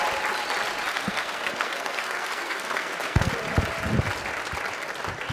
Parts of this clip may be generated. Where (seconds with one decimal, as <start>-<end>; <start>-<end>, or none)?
0.9-3.3